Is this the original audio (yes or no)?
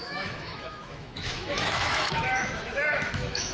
no